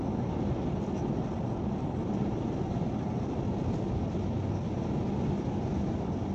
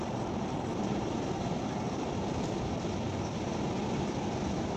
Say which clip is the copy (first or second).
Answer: second